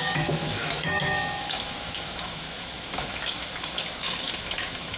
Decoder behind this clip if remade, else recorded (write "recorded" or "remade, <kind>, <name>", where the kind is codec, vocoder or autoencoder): remade, autoencoder, DAC-VAE